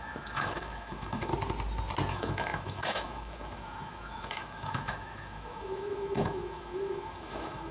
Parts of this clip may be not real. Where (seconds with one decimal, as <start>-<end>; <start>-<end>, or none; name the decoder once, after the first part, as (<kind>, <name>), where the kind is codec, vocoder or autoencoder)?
0.0-1.3 (autoencoder, DAC-VAE); 2.1-7.7